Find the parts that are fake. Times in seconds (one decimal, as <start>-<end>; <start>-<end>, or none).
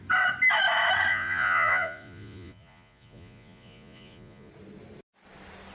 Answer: 1.1-4.5